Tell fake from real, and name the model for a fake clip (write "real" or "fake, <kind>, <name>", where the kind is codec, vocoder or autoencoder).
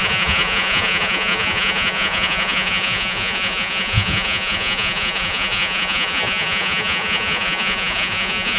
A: fake, vocoder, Vocos